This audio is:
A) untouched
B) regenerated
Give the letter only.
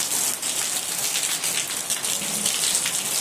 A